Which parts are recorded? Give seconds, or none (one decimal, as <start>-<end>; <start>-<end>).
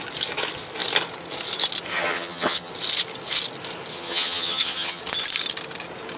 0.0-1.9; 2.7-3.9; 5.0-6.2